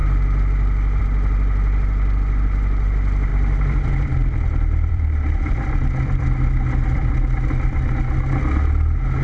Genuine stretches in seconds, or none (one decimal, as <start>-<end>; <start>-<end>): 0.0-3.3; 7.9-9.2